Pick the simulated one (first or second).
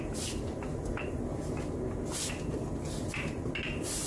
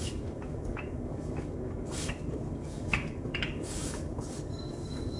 second